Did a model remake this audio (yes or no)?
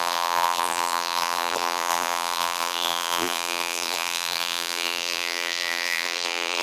yes